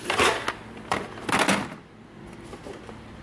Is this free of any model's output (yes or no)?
yes